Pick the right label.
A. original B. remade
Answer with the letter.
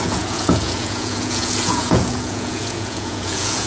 B